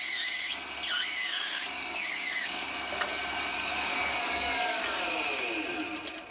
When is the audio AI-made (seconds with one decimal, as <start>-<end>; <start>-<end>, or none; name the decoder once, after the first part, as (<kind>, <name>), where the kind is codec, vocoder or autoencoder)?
1.2-5.0 (codec, DAC)

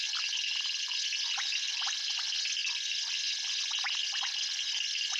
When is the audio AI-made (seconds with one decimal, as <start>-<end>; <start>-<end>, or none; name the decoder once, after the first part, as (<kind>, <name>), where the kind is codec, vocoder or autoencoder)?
none